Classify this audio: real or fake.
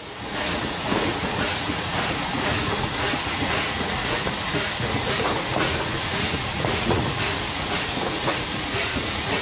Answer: fake